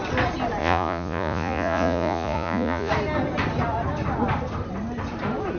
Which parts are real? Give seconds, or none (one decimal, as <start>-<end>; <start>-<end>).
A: 0.0-0.6; 2.9-5.6